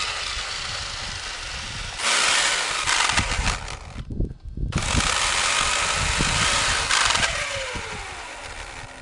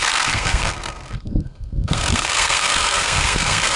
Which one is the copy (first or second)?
second